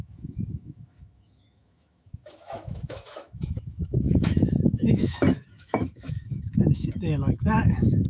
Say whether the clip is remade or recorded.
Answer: remade